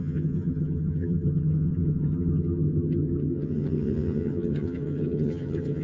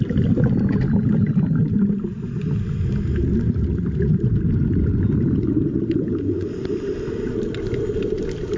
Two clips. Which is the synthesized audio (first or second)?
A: first